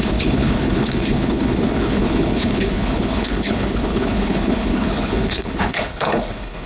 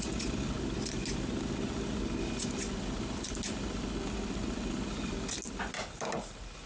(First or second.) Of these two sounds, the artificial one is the first